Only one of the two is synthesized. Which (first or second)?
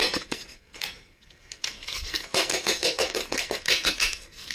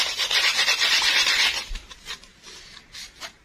first